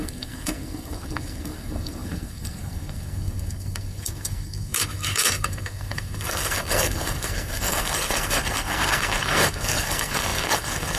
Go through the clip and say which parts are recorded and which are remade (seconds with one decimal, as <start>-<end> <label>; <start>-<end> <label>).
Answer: 0.0-11.0 remade